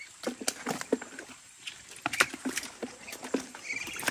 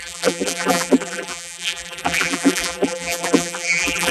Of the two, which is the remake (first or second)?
second